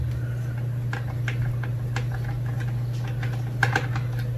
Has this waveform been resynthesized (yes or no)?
no